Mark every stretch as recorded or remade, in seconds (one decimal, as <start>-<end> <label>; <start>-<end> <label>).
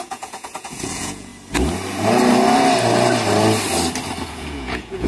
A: 0.0-1.3 remade; 1.3-4.3 recorded; 4.3-5.1 remade